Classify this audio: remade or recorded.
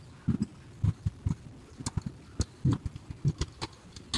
recorded